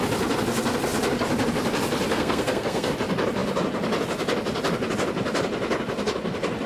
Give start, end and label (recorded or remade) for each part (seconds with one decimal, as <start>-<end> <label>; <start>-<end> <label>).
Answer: 0.0-2.1 recorded; 2.1-2.9 remade; 2.9-6.7 recorded